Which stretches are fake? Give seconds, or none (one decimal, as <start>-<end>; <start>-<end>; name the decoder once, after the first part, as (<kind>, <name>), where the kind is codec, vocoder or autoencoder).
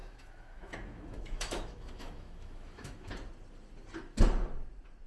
0.0-3.1 (autoencoder, DAC-VAE)